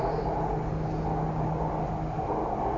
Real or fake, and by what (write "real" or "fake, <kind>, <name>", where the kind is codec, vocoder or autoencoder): real